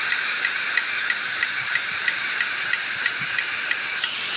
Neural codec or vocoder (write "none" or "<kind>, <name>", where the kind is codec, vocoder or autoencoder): none